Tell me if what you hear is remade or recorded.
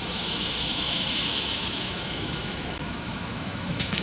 remade